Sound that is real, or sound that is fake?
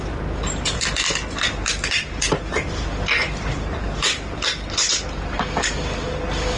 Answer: real